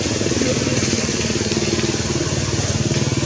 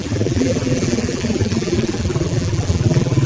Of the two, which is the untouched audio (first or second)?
first